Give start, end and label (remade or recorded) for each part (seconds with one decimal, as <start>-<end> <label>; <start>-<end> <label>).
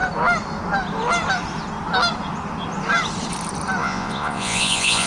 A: 0.0-3.8 recorded; 3.8-5.1 remade